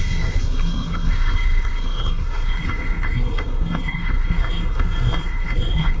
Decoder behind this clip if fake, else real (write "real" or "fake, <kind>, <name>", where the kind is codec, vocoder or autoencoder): fake, codec, SNAC